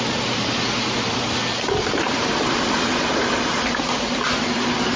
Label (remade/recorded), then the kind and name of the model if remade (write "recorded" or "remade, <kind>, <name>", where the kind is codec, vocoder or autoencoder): recorded